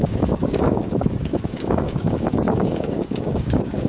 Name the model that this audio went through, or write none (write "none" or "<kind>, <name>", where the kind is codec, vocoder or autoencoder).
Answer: codec, DAC